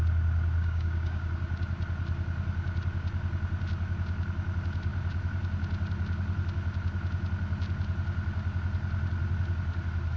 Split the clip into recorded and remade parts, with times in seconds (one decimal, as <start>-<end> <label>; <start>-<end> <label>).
0.0-0.6 recorded; 0.6-1.3 remade; 1.3-10.2 recorded